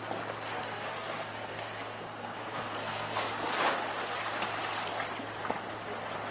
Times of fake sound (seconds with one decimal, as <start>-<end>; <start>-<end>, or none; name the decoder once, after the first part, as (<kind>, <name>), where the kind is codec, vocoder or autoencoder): 0.6-3.3 (codec, SNAC)